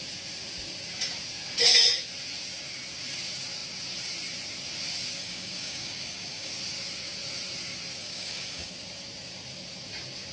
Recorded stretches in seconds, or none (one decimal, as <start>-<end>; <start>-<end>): 0.0-5.2; 6.5-8.0; 8.7-10.3